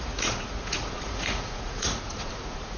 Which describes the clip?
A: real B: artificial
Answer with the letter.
B